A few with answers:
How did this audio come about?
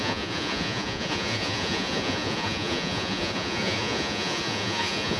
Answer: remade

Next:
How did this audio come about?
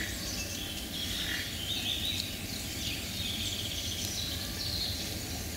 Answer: recorded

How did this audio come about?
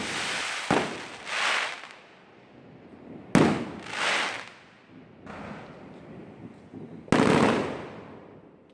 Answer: recorded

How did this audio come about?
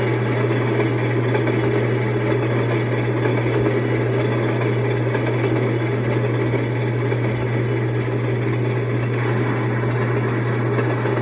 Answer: recorded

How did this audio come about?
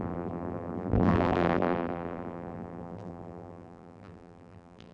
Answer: remade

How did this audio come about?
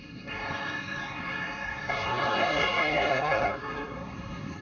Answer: remade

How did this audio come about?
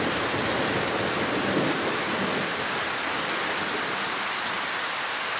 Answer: recorded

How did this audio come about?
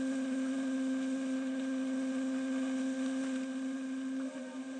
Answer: recorded